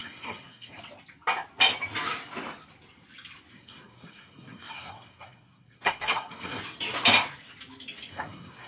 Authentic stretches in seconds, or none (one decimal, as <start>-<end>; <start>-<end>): 0.8-3.5; 6.6-8.1